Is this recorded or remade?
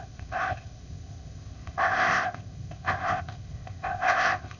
remade